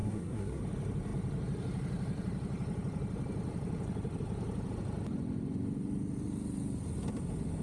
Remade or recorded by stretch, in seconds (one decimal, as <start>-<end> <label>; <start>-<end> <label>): 0.0-0.6 remade; 0.6-7.6 recorded